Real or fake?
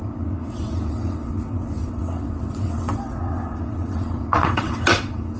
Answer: fake